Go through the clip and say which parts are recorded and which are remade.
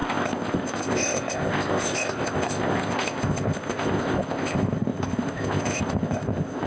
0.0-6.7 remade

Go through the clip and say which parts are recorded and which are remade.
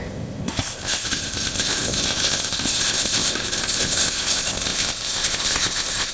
0.0-6.1 remade